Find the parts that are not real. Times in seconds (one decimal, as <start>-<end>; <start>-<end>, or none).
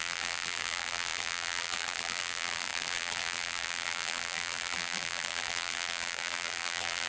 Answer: 0.0-7.1